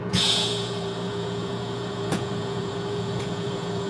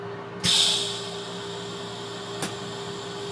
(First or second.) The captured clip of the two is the second